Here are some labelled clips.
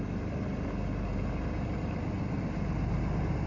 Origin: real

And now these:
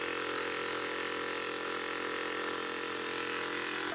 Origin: real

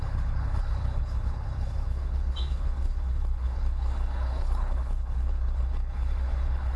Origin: fake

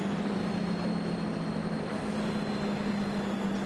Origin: real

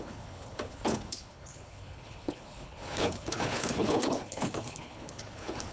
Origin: fake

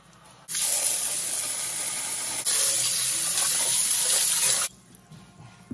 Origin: real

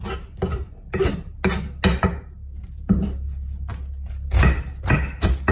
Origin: real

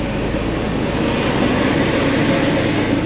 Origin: real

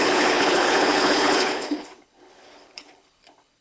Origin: fake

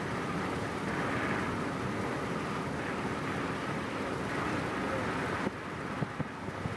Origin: real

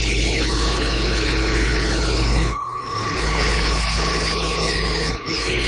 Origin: fake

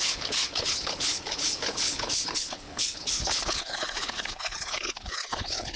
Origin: fake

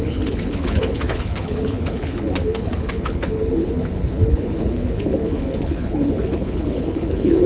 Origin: fake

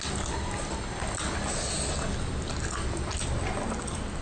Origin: real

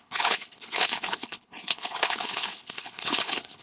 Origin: fake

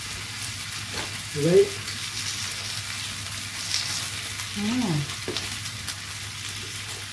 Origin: real